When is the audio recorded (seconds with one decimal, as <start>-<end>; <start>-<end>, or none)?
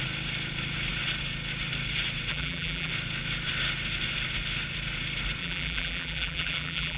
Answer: 0.0-2.3; 2.9-5.4